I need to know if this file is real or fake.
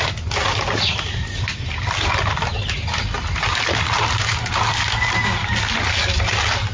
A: real